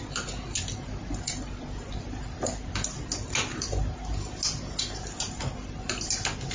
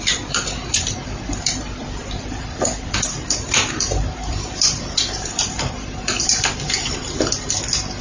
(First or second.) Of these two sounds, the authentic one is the first